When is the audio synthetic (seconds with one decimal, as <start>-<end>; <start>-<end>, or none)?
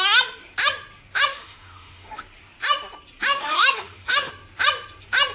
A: 1.3-2.2; 3.3-4.3